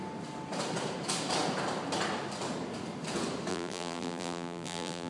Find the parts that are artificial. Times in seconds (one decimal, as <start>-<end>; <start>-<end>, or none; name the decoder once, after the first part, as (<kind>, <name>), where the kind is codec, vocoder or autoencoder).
3.5-5.1 (vocoder, BigVGAN v2)